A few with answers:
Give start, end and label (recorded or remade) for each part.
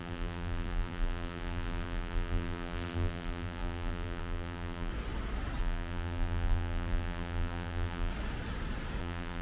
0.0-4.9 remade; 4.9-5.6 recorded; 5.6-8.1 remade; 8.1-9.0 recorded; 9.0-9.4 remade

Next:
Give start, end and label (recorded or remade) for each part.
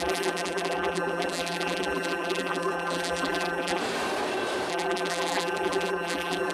0.0-3.8 remade; 3.8-4.7 recorded; 4.7-6.5 remade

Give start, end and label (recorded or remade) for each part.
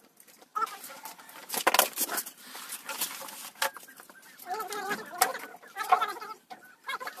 0.0-0.5 remade; 0.5-4.8 recorded; 4.8-7.2 remade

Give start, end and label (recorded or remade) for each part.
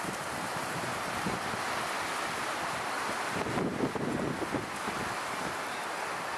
0.0-0.9 remade; 0.9-4.7 recorded; 4.7-6.4 remade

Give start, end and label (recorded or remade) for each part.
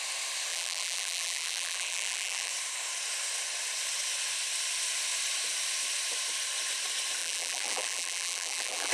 0.0-0.5 recorded; 0.5-2.5 remade; 2.5-7.2 recorded; 7.2-8.9 remade